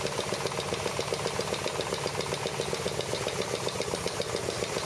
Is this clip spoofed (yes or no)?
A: no